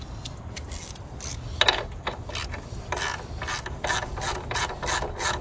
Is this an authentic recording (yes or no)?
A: yes